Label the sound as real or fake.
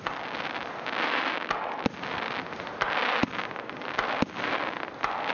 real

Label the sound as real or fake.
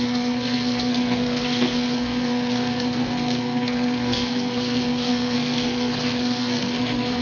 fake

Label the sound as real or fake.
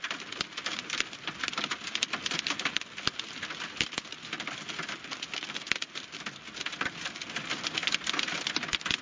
real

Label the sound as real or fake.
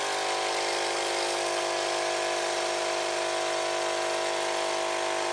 real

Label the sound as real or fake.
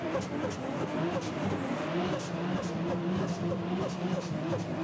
real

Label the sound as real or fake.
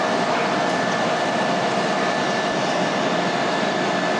real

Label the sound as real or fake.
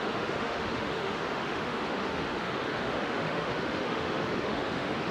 fake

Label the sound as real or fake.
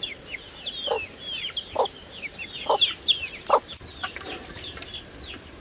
real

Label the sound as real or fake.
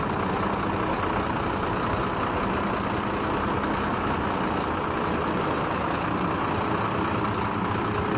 real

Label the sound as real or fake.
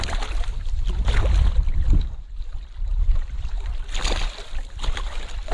fake